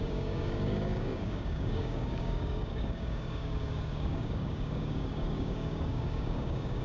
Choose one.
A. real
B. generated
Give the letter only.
B